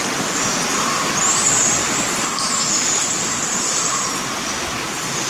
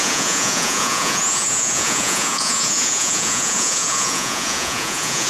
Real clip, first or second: first